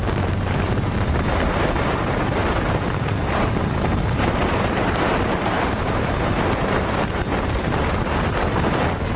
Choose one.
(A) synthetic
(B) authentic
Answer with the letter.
A